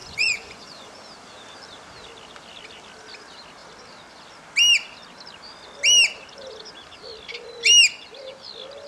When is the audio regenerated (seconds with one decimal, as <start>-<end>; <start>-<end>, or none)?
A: 0.0-0.9